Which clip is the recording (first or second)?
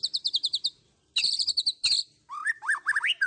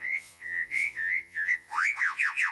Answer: first